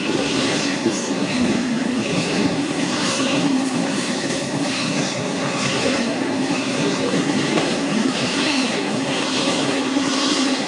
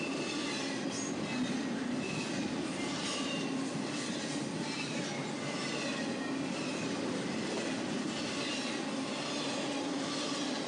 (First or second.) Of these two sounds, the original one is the second